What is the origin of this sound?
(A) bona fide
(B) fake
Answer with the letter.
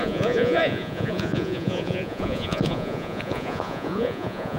B